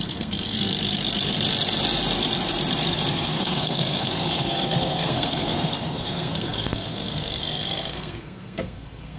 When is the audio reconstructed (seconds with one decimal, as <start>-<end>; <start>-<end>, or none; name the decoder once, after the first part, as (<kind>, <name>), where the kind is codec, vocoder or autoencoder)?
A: 0.0-0.7 (codec, SNAC); 3.1-9.2